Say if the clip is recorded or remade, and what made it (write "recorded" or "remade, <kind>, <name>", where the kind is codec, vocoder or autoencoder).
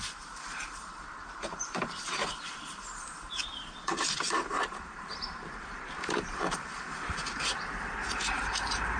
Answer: remade, vocoder, BigVGAN v2